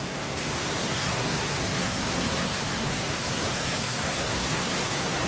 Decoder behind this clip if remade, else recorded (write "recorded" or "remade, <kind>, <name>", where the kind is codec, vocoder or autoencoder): remade, codec, SNAC